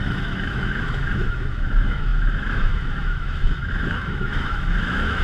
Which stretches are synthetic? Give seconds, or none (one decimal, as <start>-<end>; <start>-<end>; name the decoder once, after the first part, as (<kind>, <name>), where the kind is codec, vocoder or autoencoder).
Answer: 0.0-5.2 (autoencoder, DAC-VAE)